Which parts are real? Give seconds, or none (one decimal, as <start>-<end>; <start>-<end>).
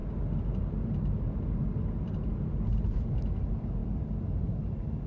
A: 0.0-5.1